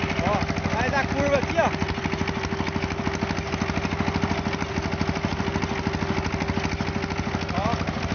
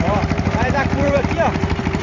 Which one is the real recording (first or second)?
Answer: first